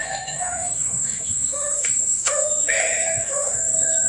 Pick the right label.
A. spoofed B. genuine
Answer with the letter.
A